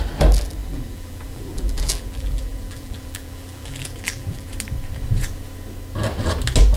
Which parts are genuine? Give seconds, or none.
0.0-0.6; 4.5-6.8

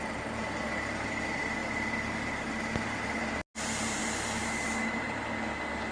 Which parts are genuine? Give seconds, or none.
0.0-4.4; 5.0-5.9

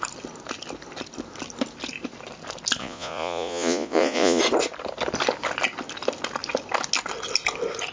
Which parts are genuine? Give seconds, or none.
0.0-2.8; 4.4-7.9

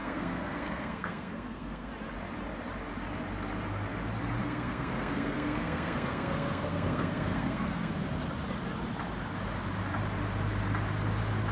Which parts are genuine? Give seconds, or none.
1.9-4.4; 7.9-11.5

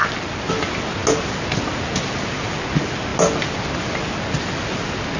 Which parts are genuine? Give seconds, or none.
0.0-5.2

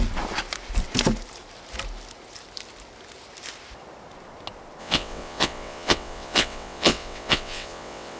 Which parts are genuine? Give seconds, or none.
0.0-4.8

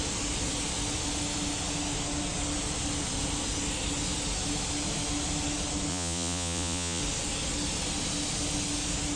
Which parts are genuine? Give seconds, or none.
0.0-5.9; 7.0-9.2